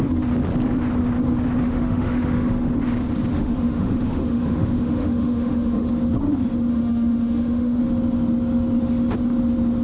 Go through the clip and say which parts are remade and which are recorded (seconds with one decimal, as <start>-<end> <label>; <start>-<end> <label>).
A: 0.0-1.6 recorded; 1.6-2.7 remade; 2.7-3.3 recorded; 3.3-5.9 remade; 5.9-6.7 recorded; 6.7-7.8 remade; 7.8-9.8 recorded